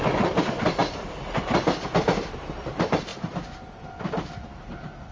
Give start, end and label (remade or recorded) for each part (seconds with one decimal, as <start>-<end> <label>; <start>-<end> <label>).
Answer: 0.0-5.1 recorded